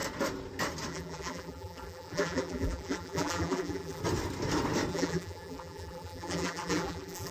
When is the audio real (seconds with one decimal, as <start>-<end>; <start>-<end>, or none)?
0.0-0.9; 4.0-4.9

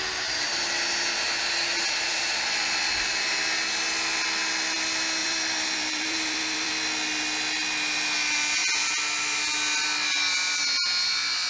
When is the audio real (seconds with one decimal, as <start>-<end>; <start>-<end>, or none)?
0.0-2.1; 3.1-5.2; 6.7-11.5

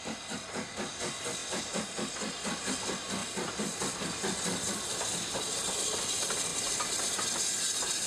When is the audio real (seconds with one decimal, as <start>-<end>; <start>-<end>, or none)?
0.0-8.1

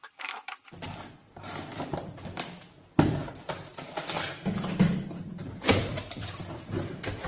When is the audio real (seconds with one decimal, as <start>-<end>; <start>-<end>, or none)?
none

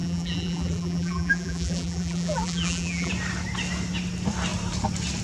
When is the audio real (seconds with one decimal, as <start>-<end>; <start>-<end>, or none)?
3.1-5.2

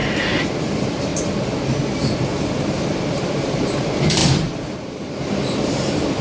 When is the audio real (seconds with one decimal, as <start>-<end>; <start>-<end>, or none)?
0.0-0.6; 1.1-3.2

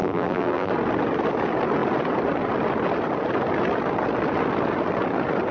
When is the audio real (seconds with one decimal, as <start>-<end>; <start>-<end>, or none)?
0.7-5.5

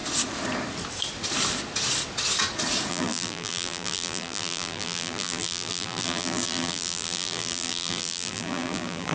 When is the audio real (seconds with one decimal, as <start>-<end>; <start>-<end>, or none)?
0.0-2.9